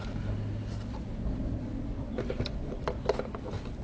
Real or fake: real